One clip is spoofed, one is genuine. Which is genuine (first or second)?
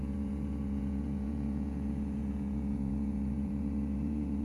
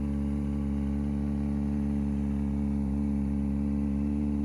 second